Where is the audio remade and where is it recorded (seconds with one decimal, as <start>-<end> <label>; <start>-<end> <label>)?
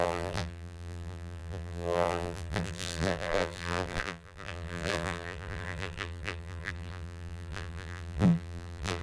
0.0-9.0 remade